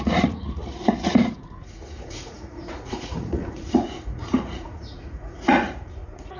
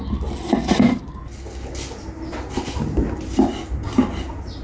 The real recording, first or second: second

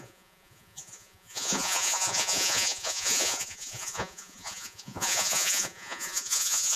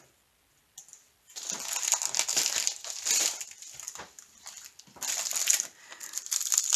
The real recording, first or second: second